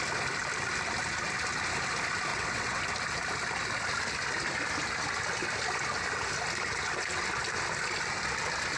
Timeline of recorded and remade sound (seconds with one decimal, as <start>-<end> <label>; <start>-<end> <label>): 0.0-2.3 recorded; 2.3-2.8 remade; 2.8-8.8 recorded